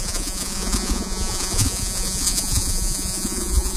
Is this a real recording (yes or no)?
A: no